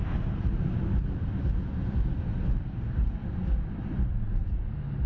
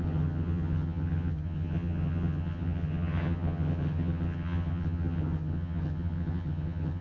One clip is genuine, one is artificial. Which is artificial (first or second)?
second